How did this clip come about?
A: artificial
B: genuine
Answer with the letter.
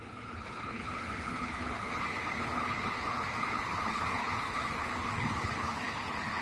A